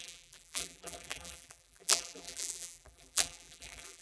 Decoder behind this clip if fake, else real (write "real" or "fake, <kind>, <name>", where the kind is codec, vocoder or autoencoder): fake, vocoder, BigVGAN v2